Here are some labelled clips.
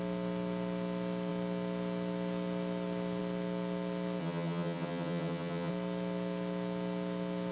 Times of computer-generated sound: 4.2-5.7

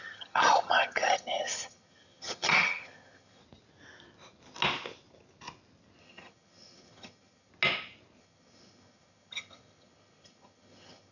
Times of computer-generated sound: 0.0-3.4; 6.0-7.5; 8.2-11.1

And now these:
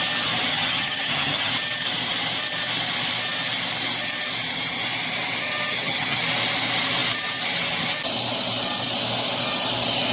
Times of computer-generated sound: 0.5-1.5; 5.7-6.2

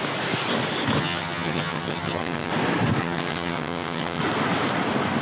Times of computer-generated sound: 1.0-2.5; 3.0-4.2

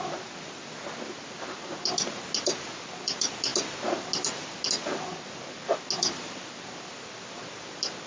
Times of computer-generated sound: none

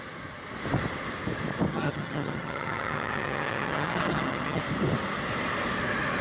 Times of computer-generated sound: 1.7-4.6

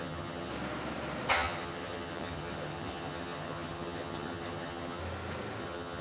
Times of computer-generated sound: 0.0-0.5; 1.3-5.0; 5.6-6.0